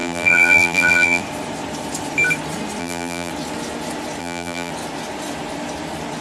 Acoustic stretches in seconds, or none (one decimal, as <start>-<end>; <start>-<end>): 1.2-2.8; 3.3-4.2; 4.7-6.2